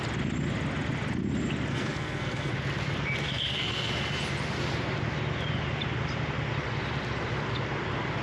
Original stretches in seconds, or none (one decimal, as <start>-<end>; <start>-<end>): 0.0-1.7; 2.5-3.2; 3.9-8.2